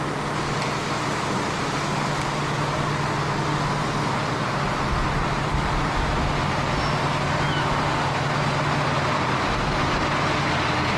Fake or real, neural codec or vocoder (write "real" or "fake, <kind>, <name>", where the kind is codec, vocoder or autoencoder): real